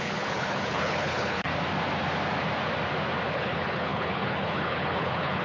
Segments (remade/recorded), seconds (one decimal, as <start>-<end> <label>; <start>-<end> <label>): 0.0-1.5 remade; 1.5-3.3 recorded; 3.3-5.4 remade

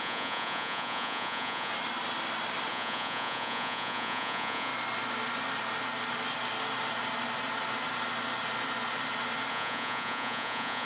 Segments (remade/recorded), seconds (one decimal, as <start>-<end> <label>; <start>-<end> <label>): 0.0-1.7 remade; 1.7-2.7 recorded; 2.7-4.7 remade; 4.7-9.5 recorded; 9.5-10.9 remade

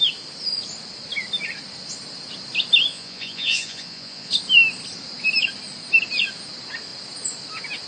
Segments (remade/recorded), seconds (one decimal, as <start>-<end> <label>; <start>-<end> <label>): 0.0-2.9 recorded; 2.9-4.3 remade; 4.3-7.9 recorded

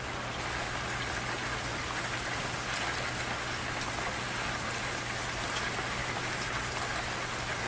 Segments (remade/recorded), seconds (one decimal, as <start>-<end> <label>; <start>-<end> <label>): 0.0-7.7 recorded

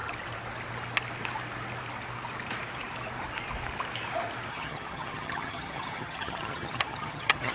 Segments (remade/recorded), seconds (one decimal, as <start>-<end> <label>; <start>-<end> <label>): 0.0-4.5 recorded; 4.5-7.5 remade